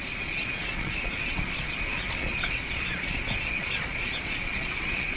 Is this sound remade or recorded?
remade